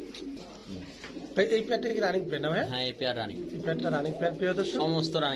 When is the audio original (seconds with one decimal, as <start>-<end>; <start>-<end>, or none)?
0.0-3.8; 4.8-5.4